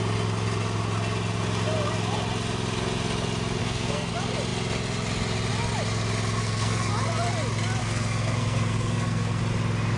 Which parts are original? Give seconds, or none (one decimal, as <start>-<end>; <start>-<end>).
0.0-3.6; 4.1-6.4; 6.9-7.8; 9.4-10.0